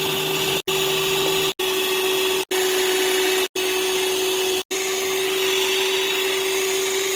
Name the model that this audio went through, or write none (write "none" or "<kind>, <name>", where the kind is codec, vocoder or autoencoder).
none